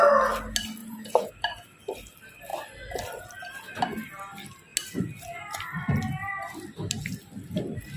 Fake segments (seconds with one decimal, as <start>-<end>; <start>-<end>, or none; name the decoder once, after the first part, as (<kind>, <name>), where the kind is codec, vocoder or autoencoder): 0.8-1.3 (vocoder, Vocos)